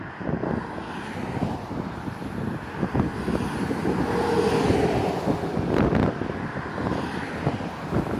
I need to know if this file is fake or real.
real